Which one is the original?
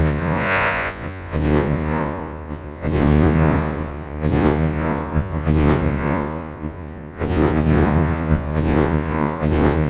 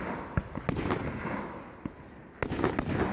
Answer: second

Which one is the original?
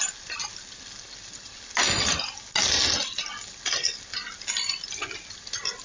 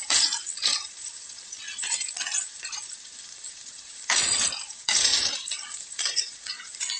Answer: first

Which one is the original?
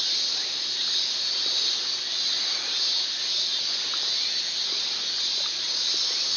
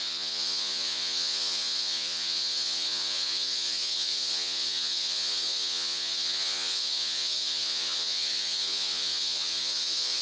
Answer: first